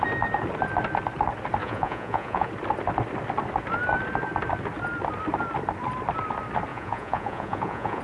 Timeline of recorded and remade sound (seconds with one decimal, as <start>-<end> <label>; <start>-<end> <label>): 0.0-1.6 recorded; 1.6-2.5 remade; 2.5-6.7 recorded; 6.7-8.0 remade